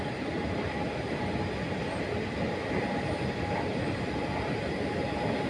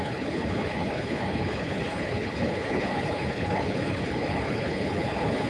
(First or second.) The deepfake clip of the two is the second